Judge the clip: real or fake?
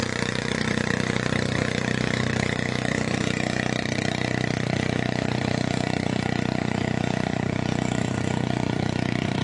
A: fake